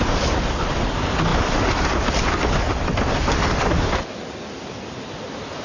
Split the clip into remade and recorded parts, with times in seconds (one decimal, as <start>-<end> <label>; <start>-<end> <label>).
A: 0.0-5.6 recorded